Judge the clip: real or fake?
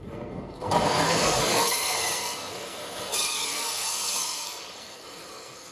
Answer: fake